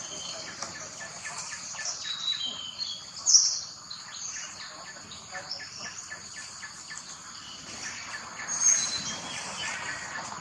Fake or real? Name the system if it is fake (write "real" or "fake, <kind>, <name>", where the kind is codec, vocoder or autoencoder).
real